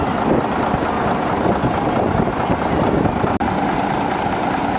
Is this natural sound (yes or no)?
yes